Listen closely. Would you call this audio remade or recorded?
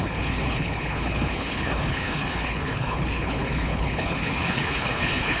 remade